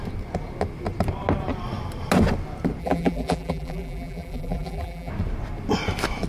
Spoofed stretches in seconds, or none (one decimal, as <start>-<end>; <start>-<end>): 2.8-5.1